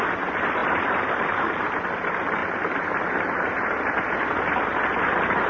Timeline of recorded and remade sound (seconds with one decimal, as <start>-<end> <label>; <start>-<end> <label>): 0.0-0.6 recorded; 0.6-1.6 remade; 1.6-2.4 recorded; 2.4-2.9 remade; 2.9-5.5 recorded